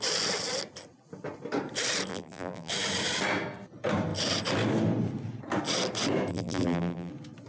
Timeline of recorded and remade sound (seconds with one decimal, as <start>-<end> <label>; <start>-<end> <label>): 0.0-2.1 recorded; 2.1-2.7 remade; 2.7-6.3 recorded; 6.3-7.1 remade; 7.1-7.5 recorded